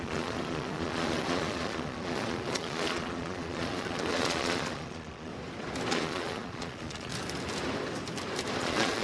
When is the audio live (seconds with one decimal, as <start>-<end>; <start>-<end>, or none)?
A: 5.3-5.9; 7.1-8.6

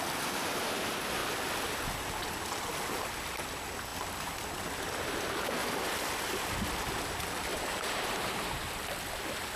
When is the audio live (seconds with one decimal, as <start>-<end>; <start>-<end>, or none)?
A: 0.0-9.6